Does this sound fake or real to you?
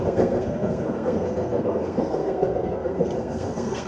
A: fake